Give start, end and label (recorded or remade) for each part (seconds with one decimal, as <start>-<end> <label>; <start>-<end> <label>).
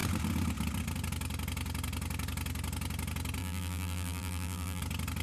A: 0.0-3.4 recorded; 3.4-4.8 remade; 4.8-5.2 recorded